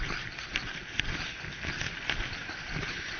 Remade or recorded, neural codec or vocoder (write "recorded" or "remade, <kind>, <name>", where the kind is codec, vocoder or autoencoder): recorded